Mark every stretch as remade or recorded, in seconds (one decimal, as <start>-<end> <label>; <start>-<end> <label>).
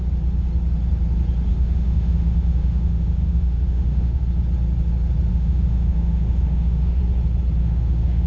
0.0-1.5 recorded; 1.5-4.2 remade; 4.2-5.3 recorded; 5.3-7.0 remade; 7.0-7.6 recorded; 7.6-8.3 remade